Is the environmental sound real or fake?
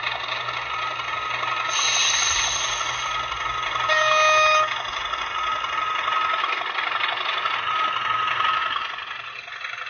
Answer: real